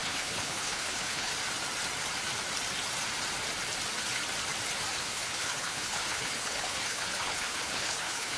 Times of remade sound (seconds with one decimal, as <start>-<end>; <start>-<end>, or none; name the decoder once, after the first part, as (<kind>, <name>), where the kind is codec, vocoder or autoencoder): 0.0-1.3 (codec, HILCodec); 5.0-8.4